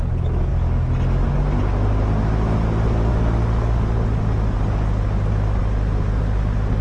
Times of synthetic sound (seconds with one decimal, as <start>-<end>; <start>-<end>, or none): none